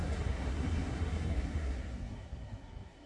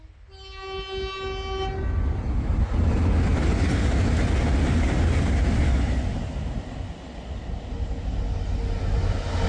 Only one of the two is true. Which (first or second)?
second